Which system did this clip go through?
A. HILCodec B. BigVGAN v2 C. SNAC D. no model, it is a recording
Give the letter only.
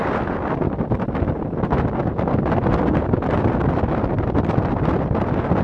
D